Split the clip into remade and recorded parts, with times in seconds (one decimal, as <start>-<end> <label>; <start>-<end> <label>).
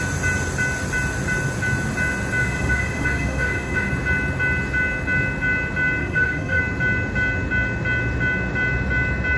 0.0-2.4 recorded; 2.4-3.9 remade; 3.9-6.0 recorded; 6.0-6.6 remade; 6.6-9.4 recorded